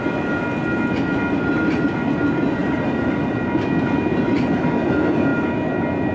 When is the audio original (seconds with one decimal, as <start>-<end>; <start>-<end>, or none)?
0.0-2.6; 3.3-6.1